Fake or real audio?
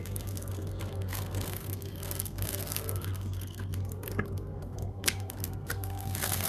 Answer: fake